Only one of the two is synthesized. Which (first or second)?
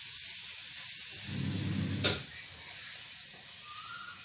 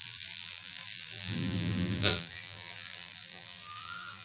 second